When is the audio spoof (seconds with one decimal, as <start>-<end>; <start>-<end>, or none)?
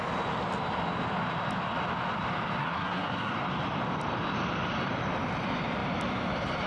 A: 2.6-3.3